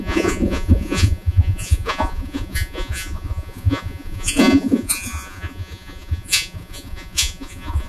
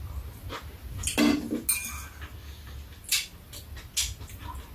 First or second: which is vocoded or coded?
first